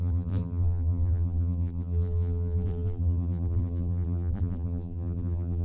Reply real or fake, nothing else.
fake